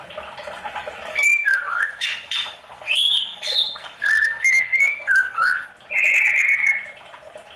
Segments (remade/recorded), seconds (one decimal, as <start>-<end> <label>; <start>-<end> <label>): 0.0-1.1 recorded; 1.1-5.7 remade; 5.7-7.6 recorded